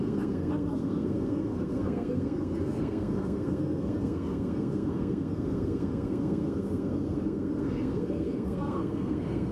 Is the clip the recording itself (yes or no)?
no